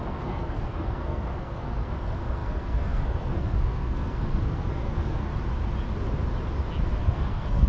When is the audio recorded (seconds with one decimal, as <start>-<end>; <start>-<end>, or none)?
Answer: 5.3-7.0